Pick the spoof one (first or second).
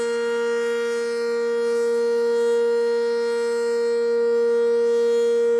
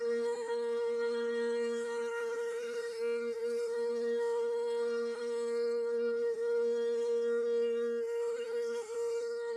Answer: second